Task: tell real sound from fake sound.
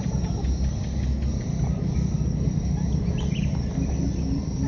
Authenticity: real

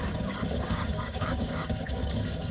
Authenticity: fake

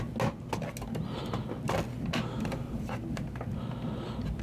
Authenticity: real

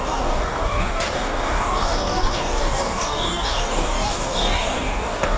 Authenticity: fake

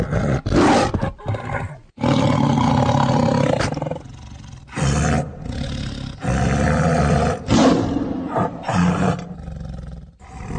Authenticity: real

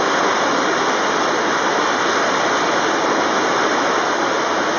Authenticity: real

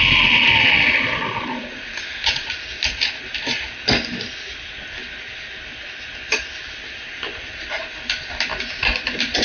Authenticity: real